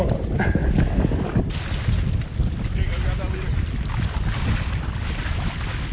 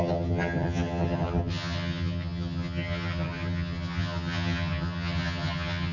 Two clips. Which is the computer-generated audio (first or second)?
second